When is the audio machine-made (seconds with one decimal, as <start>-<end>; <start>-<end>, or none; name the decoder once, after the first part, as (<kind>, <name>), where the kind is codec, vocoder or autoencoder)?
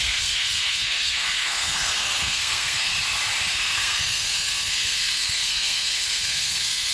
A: 0.0-2.9 (codec, SNAC); 3.5-6.9